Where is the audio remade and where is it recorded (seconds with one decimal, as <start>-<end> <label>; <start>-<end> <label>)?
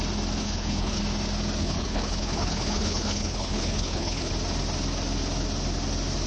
0.0-0.4 recorded; 0.4-1.0 remade; 1.0-1.6 recorded; 1.6-4.3 remade; 4.3-6.3 recorded